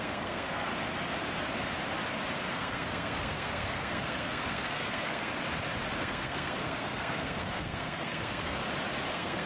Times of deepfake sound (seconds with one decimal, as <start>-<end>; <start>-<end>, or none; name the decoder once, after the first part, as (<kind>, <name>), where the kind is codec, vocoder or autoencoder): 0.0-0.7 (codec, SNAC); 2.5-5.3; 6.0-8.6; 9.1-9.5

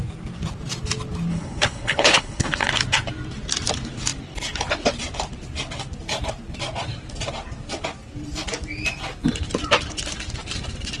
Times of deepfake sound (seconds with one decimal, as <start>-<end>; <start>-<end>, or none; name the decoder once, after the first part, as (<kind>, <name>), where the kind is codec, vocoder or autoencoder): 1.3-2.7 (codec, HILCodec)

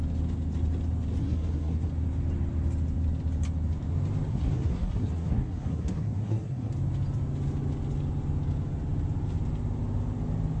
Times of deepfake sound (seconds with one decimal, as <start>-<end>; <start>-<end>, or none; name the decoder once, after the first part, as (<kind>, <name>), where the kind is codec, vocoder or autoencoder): 1.2-1.9 (codec, SNAC); 4.3-6.7

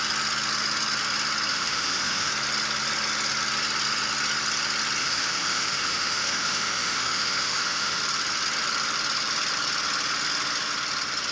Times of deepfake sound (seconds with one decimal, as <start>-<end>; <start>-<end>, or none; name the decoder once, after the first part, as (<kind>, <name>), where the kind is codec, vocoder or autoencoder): 1.5-2.3 (autoencoder, DAC-VAE); 5.0-8.0

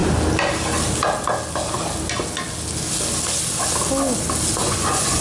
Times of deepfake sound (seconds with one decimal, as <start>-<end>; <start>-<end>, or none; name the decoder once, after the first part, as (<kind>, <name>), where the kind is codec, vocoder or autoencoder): 4.6-5.2 (vocoder, Vocos)

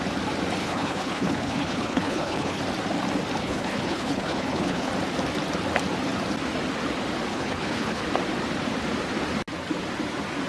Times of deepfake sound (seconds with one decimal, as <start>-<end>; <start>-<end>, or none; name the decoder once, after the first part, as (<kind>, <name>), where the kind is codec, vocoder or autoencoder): 0.6-2.6 (codec, HILCodec); 3.4-4.9; 7.3-8.0